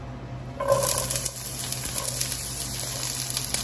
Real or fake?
real